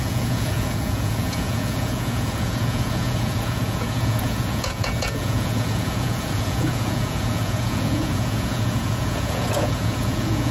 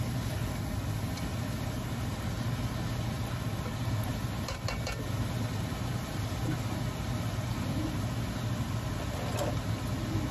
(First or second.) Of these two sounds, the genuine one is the second